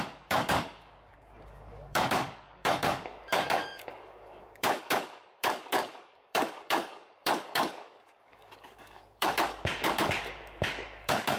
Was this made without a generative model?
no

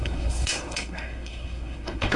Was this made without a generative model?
no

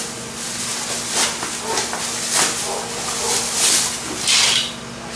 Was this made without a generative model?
yes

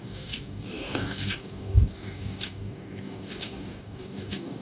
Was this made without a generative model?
no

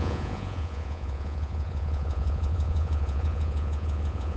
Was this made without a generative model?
no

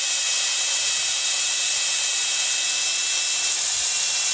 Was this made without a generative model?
yes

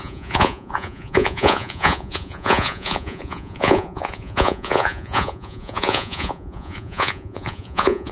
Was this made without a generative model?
no